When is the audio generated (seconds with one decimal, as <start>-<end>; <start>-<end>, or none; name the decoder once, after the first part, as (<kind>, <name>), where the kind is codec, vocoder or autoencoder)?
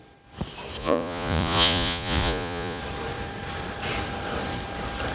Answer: 0.8-2.8 (vocoder, Vocos)